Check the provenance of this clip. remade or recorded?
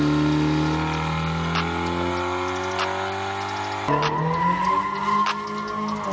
recorded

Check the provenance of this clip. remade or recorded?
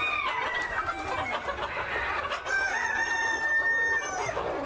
recorded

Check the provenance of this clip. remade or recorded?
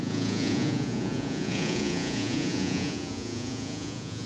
remade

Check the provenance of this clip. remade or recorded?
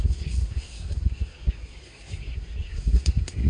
remade